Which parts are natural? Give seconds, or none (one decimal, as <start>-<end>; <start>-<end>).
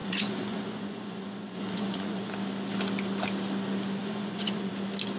2.3-4.0; 4.7-5.2